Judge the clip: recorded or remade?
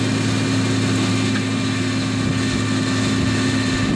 recorded